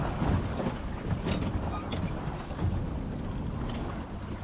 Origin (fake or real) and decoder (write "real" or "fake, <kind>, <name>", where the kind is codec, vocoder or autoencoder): real